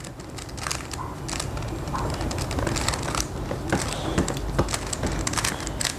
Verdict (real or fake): real